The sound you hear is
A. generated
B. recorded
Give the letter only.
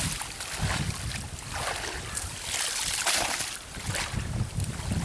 B